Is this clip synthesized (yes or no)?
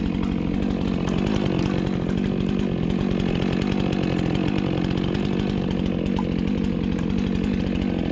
no